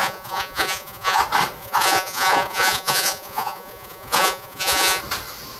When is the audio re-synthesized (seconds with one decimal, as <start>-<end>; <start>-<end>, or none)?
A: 0.0-1.2; 1.6-5.0